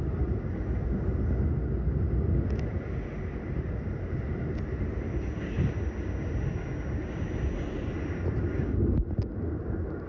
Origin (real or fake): real